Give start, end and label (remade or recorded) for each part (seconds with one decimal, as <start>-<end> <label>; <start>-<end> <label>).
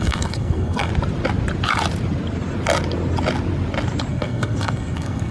0.0-0.9 remade; 0.9-4.1 recorded; 4.1-5.3 remade